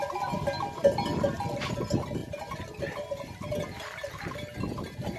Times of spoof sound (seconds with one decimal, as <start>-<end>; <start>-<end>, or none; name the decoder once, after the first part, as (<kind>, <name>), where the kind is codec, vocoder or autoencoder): none